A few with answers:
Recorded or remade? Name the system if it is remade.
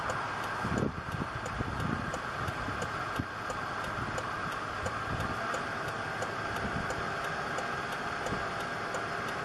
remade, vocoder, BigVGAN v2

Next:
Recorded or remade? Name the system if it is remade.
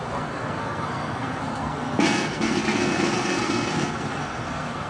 remade, codec, SNAC